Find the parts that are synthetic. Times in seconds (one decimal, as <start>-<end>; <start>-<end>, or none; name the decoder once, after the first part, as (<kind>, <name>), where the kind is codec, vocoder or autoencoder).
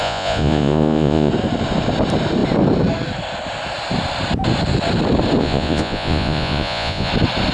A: 0.0-1.3 (vocoder, Vocos); 5.4-7.1